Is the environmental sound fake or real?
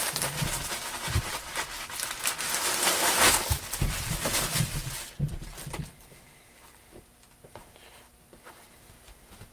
real